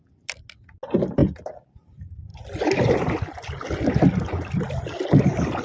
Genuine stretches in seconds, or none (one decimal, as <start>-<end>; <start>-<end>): 0.0-5.6